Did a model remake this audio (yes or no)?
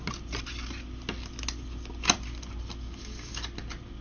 no